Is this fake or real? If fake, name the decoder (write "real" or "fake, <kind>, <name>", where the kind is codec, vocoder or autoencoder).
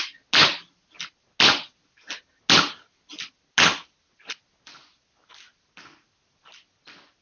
real